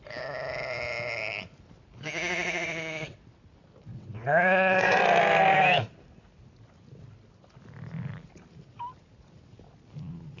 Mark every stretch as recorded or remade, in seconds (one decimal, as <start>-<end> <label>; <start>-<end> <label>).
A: 0.0-2.3 recorded; 2.3-3.2 remade; 3.2-3.9 recorded; 3.9-5.0 remade; 5.0-10.4 recorded